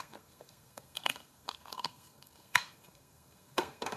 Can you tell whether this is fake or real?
fake